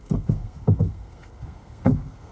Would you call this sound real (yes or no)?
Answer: no